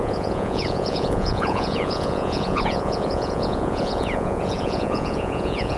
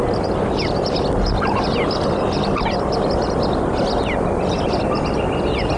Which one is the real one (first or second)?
second